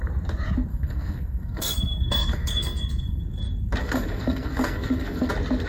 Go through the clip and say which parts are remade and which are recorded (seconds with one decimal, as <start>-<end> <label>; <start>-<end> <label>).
0.0-0.7 recorded; 0.7-3.2 remade; 3.2-3.8 recorded; 3.8-5.3 remade; 5.3-5.7 recorded